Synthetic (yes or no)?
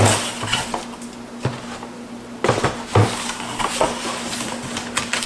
no